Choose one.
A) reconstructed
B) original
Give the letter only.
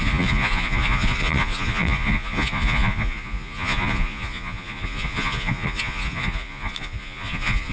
A